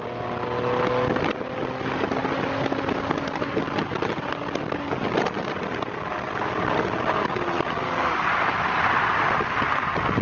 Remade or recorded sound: recorded